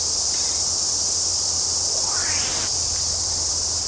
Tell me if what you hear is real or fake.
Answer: real